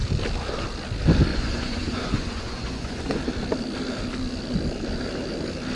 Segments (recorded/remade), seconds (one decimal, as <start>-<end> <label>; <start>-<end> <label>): 0.0-1.3 recorded; 1.3-3.2 remade; 3.2-5.7 recorded